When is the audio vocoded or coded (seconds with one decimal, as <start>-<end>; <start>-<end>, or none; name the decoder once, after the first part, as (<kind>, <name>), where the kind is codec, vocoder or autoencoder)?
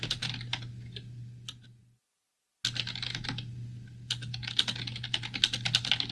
none